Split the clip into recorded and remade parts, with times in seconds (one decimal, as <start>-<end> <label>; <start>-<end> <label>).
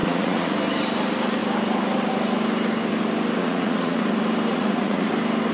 0.0-0.5 remade; 0.5-3.4 recorded; 3.4-4.0 remade; 4.0-4.5 recorded; 4.5-5.1 remade; 5.1-5.5 recorded